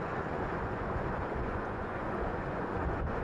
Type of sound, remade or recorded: remade